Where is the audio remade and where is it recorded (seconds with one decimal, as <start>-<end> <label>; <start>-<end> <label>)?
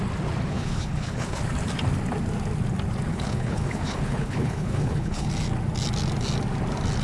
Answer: 0.0-0.5 recorded; 0.5-1.4 remade; 1.4-3.1 recorded; 3.1-5.3 remade; 5.3-7.0 recorded